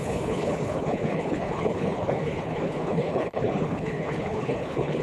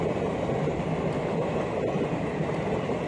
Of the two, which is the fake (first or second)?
first